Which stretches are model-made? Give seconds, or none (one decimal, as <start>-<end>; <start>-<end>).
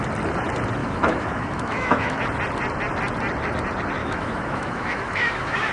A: 0.8-2.2; 4.0-5.7